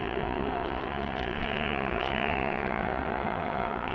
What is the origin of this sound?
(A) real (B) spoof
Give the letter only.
B